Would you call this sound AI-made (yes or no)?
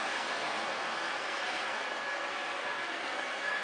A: yes